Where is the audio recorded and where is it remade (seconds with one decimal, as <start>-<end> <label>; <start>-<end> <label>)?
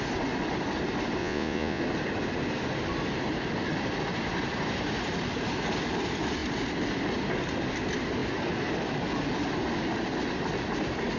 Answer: 0.0-1.2 recorded; 1.2-1.8 remade; 1.8-11.2 recorded